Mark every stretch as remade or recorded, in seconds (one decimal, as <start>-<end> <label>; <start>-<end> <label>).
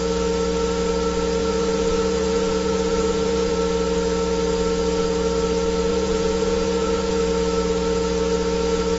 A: 0.0-1.4 recorded; 1.4-3.5 remade; 3.5-5.9 recorded; 5.9-7.2 remade; 7.2-9.0 recorded